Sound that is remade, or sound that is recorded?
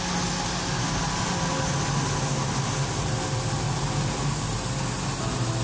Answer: recorded